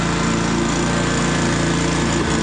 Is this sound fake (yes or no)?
no